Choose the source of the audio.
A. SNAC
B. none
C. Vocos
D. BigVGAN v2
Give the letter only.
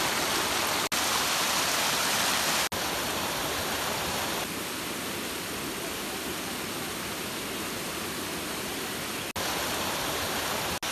B